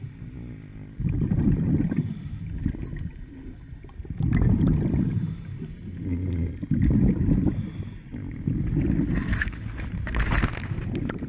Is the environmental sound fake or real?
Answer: real